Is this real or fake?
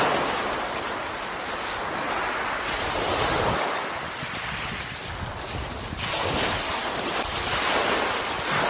real